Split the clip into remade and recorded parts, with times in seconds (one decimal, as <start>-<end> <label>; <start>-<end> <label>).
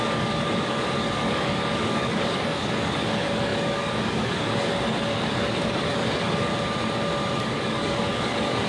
0.0-6.5 remade; 6.5-7.4 recorded; 7.4-8.7 remade